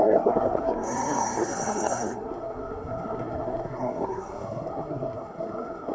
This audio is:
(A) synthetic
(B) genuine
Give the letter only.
A